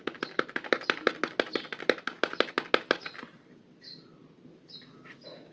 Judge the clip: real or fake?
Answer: real